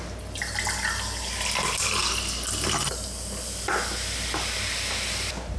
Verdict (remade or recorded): recorded